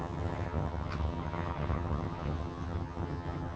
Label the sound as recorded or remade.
remade